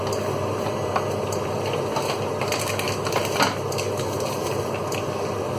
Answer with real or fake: real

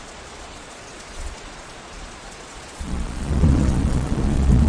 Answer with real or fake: fake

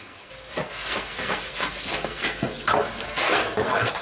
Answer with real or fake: fake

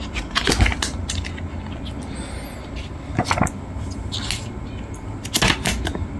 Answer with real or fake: real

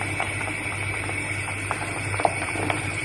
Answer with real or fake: real